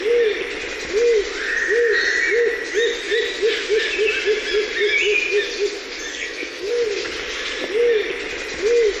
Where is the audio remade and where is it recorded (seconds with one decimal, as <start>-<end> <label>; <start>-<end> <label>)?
0.0-6.1 recorded; 6.1-6.7 remade; 6.7-9.0 recorded